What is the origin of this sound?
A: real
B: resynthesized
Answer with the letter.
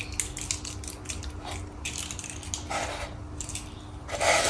A